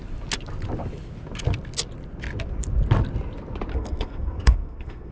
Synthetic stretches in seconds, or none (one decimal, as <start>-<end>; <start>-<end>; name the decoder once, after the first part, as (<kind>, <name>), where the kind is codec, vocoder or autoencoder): 3.7-5.1 (codec, SNAC)